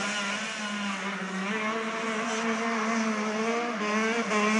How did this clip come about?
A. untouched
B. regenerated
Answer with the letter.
A